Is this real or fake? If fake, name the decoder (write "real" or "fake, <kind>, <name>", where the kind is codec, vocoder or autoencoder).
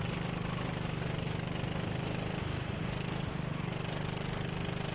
real